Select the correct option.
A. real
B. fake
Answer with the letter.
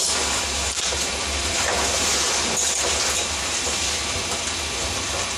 B